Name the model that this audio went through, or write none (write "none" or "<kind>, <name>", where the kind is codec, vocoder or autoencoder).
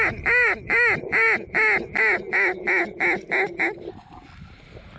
none